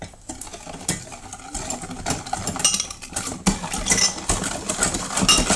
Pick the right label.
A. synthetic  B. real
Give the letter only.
B